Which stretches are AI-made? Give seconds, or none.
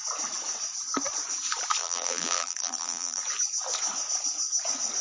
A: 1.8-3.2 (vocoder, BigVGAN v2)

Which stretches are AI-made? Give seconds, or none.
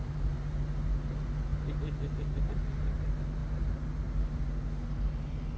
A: none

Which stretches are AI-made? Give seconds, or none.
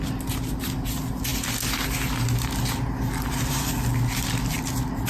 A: none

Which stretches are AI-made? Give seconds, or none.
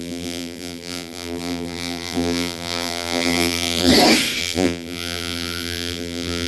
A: 0.0-3.9 (vocoder, BigVGAN v2); 4.4-6.5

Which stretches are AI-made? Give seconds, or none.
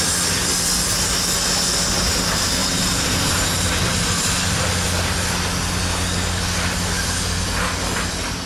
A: 2.6-3.8 (vocoder, BigVGAN v2)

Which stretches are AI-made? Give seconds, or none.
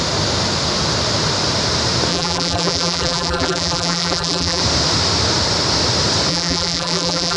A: 2.1-4.6 (vocoder, BigVGAN v2); 6.3-7.4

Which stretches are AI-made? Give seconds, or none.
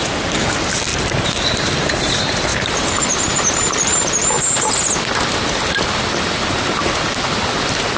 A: 0.9-1.7 (vocoder, BigVGAN v2); 2.5-4.7